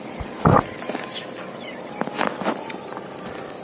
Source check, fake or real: real